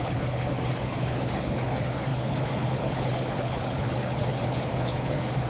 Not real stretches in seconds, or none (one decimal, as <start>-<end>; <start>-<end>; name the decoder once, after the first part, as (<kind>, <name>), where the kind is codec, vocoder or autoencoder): 0.0-5.5 (codec, HILCodec)

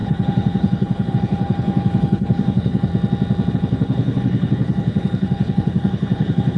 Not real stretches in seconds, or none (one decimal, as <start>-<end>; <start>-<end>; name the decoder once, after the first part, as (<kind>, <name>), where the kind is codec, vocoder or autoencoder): 0.0-2.9 (codec, HILCodec); 3.5-6.6

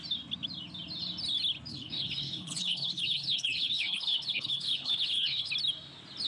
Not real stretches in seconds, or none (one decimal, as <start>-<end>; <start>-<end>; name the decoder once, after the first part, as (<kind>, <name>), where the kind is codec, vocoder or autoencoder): 1.7-5.5 (codec, HILCodec)